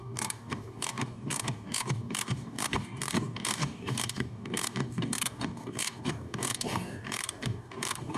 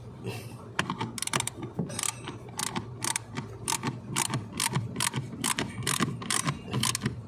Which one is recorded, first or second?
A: second